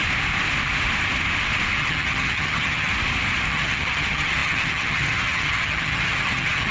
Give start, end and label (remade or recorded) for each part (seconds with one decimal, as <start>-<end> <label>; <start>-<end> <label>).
0.0-1.8 recorded; 1.8-2.9 remade; 2.9-3.5 recorded; 3.5-6.7 remade